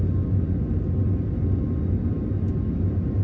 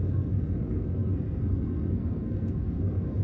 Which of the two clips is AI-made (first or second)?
second